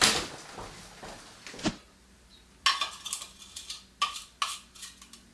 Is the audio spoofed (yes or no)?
no